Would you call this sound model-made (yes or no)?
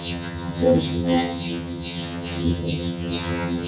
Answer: yes